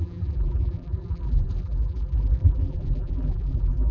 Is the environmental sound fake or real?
fake